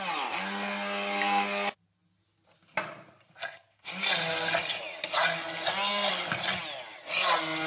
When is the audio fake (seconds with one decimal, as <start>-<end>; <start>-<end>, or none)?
none